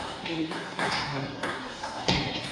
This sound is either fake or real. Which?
fake